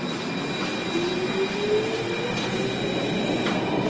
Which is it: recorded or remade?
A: recorded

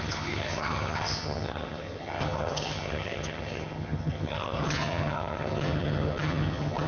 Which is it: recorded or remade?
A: remade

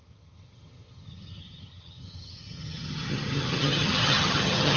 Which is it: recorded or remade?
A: remade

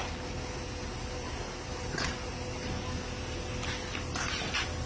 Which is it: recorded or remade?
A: recorded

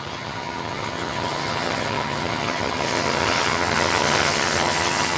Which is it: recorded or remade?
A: remade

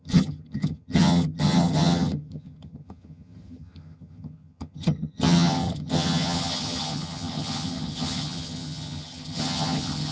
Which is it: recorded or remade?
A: remade